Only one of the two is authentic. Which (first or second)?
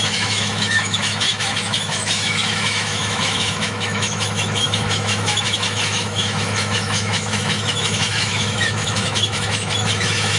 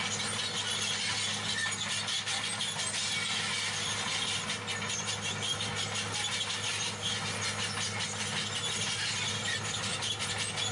second